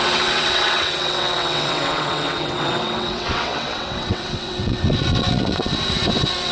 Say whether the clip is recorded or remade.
remade